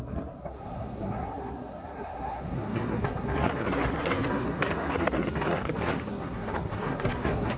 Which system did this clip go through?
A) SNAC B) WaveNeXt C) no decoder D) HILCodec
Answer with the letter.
A